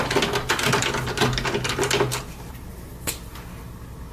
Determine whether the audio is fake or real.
real